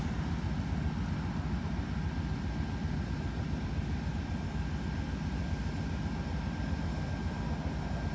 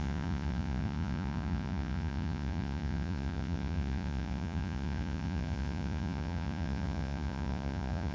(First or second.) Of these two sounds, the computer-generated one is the second